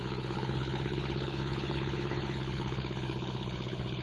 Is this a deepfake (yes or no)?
yes